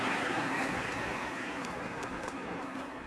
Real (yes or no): no